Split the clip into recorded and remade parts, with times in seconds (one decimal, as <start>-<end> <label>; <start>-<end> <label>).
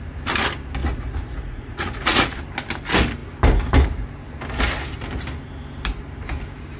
0.0-0.8 recorded; 0.8-2.4 remade; 2.4-6.8 recorded